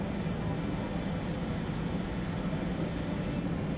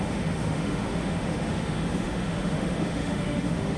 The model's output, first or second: second